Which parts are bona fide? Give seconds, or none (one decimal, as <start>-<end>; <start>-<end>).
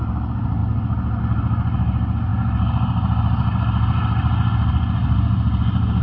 0.0-6.0